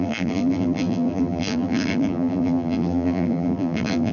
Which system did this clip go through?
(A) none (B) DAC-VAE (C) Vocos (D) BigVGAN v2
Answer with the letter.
D